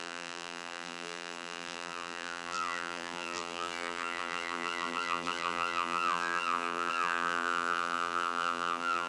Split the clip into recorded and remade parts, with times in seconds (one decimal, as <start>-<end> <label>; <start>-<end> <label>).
0.0-9.1 remade